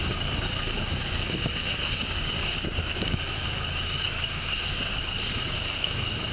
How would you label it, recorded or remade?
remade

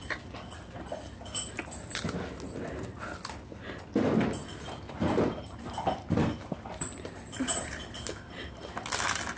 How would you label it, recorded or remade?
recorded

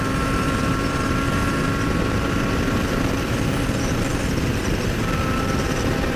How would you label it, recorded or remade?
remade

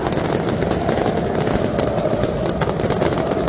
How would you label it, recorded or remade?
recorded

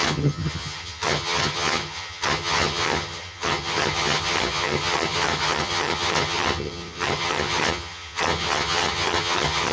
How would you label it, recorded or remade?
remade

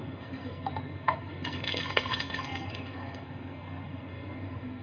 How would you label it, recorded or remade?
remade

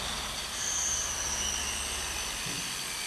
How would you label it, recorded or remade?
recorded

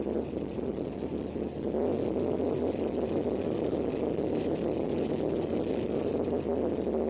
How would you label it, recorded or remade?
recorded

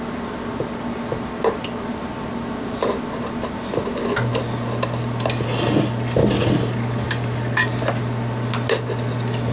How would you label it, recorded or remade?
recorded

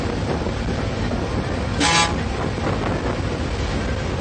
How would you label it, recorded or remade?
recorded